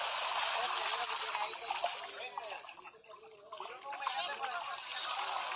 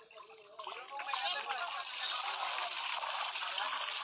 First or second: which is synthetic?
second